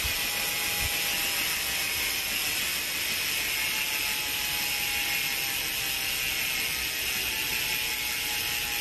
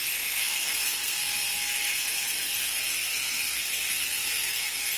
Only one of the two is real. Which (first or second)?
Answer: first